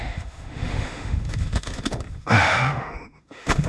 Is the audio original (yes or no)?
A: no